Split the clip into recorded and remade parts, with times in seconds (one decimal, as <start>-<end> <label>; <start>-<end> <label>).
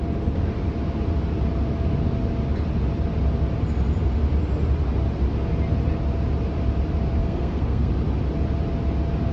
0.0-7.2 recorded; 7.2-7.9 remade; 7.9-9.3 recorded